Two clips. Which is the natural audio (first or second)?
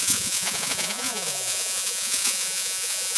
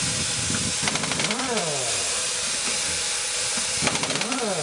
second